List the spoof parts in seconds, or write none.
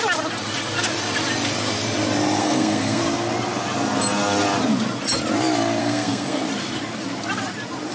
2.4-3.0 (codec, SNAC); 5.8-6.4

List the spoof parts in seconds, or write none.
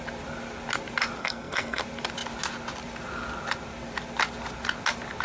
1.2-1.8 (codec, SNAC)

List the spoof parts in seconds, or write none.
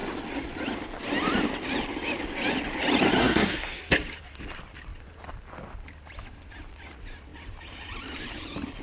3.2-3.8 (codec, SNAC)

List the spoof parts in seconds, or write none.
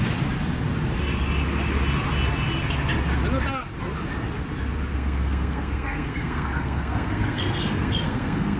4.9-8.6 (codec, SNAC)